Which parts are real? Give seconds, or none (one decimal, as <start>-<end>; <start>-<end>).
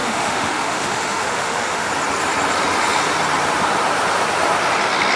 1.9-5.2